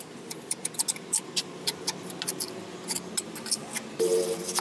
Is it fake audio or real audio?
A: real